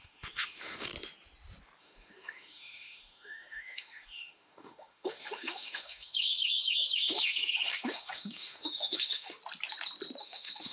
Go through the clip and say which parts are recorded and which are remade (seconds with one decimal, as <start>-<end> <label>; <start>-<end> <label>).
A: 0.0-0.9 remade; 0.9-1.8 recorded; 1.8-9.4 remade; 9.4-10.2 recorded; 10.2-10.7 remade